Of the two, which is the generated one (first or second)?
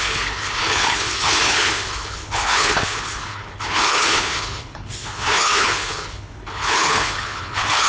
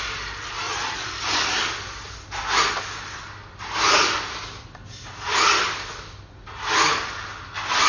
first